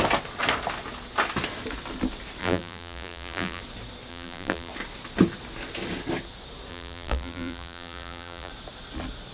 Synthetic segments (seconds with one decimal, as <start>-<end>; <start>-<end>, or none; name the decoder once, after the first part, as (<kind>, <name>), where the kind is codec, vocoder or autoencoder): 2.4-3.6 (vocoder, BigVGAN v2); 4.1-4.7; 6.7-8.5